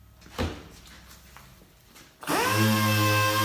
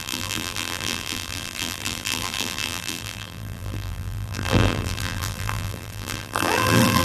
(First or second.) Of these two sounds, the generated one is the second